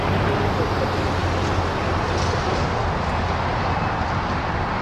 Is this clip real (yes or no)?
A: yes